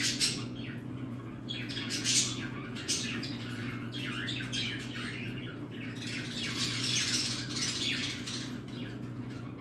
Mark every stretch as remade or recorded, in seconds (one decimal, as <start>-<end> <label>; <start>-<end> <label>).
0.0-5.5 remade; 5.5-6.5 recorded; 6.5-9.6 remade